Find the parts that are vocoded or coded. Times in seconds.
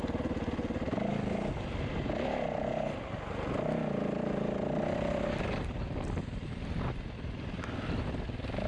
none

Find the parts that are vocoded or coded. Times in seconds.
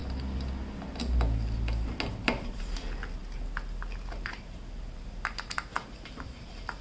none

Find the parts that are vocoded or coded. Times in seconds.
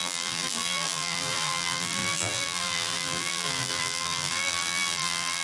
0.0-5.4